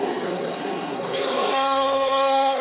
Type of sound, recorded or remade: remade